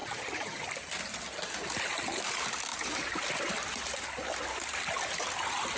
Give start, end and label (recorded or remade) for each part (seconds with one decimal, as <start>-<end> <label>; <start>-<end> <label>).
0.0-0.6 remade; 0.6-5.8 recorded